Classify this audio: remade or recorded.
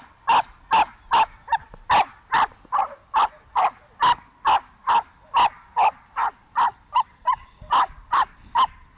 recorded